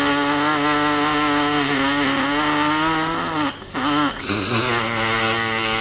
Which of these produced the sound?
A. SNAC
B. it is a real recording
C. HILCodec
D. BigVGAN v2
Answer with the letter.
B